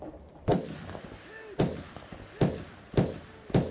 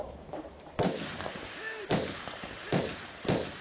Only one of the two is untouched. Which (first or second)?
first